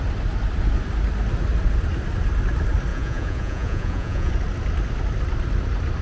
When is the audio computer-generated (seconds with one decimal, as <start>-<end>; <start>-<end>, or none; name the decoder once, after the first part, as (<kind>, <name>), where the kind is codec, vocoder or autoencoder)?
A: 2.9-4.3 (vocoder, Vocos)